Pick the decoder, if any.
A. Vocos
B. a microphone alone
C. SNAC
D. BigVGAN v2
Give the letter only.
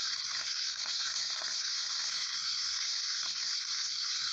C